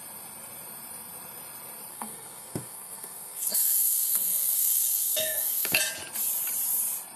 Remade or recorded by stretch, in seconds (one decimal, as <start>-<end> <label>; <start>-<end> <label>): 0.0-1.9 recorded; 1.9-5.8 remade; 5.8-7.2 recorded